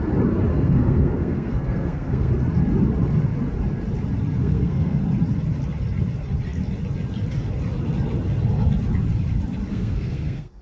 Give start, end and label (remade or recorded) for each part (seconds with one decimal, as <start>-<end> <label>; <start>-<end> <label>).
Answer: 0.0-0.5 recorded; 0.5-2.3 remade; 2.3-4.4 recorded; 4.4-5.0 remade; 5.0-9.7 recorded; 9.7-10.6 remade